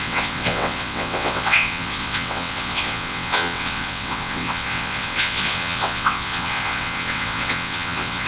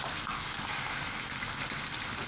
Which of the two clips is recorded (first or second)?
second